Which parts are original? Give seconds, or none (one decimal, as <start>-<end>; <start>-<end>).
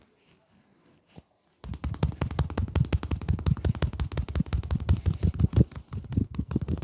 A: 0.0-6.2